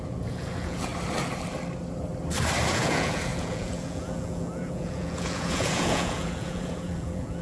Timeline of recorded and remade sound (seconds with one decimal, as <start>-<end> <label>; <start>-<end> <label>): 0.0-0.9 remade; 0.9-2.7 recorded; 2.7-7.4 remade